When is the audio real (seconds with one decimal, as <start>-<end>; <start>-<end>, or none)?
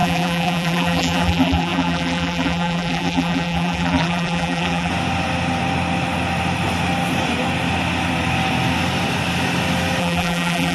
4.9-10.0